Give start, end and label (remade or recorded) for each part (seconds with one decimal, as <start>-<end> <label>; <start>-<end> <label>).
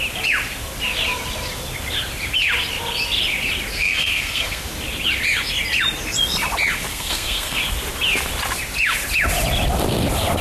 0.0-3.7 recorded; 3.7-4.6 remade; 4.6-6.9 recorded; 6.9-7.6 remade; 7.6-10.4 recorded